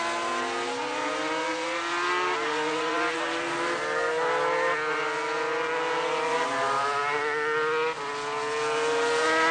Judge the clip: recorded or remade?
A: recorded